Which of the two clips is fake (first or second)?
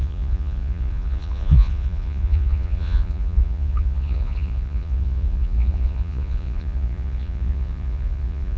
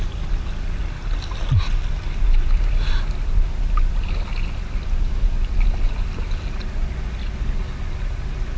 first